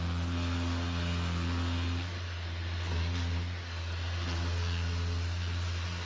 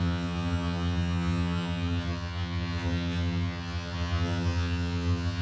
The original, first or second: first